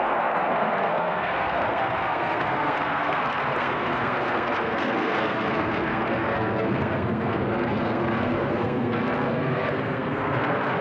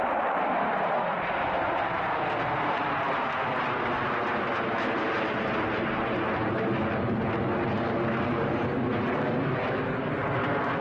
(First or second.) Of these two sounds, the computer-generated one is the first